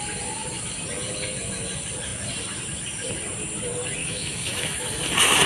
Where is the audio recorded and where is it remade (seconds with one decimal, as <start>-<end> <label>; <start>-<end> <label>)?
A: 0.0-4.0 recorded; 4.0-4.8 remade; 4.8-5.5 recorded